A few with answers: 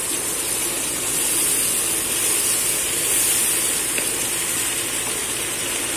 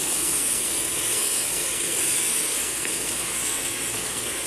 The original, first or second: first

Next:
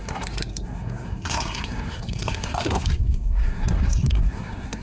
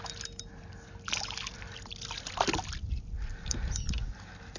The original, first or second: second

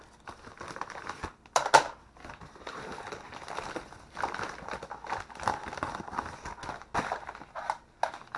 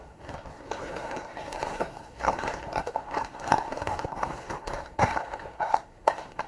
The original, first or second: first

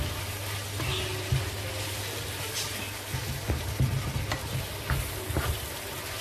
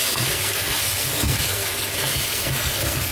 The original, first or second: first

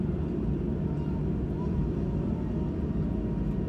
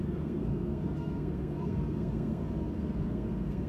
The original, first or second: first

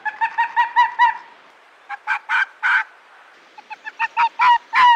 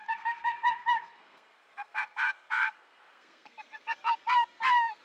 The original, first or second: first